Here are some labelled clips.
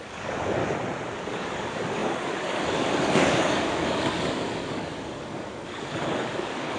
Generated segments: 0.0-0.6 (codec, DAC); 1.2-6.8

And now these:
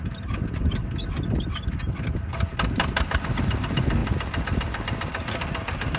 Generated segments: 0.0-0.8 (vocoder, BigVGAN v2); 1.7-6.0

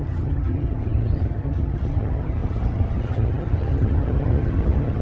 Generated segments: 0.0-5.0 (vocoder, HiFi-GAN)

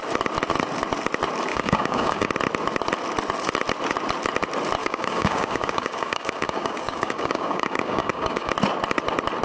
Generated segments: 1.5-2.3 (codec, DAC); 4.8-8.5